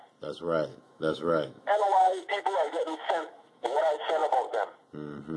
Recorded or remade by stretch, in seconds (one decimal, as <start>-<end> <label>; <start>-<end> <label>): 0.0-0.7 recorded; 0.7-3.8 remade; 3.8-5.4 recorded